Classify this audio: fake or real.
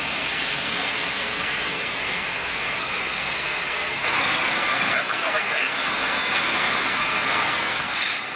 fake